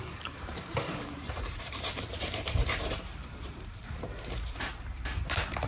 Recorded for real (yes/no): no